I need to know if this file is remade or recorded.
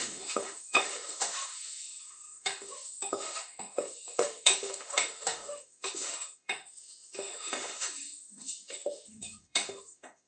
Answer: remade